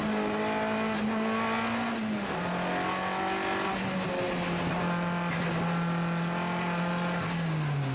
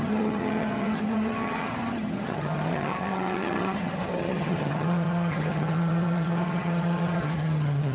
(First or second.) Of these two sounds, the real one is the first